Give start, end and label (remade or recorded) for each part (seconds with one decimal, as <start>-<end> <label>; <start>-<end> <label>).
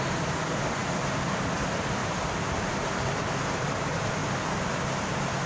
0.0-2.0 remade; 2.0-3.6 recorded; 3.6-4.2 remade; 4.2-5.5 recorded